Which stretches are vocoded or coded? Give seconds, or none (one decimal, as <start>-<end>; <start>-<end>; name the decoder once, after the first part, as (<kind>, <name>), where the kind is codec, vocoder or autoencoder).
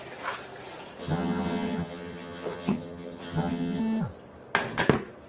1.0-3.8 (vocoder, HiFi-GAN)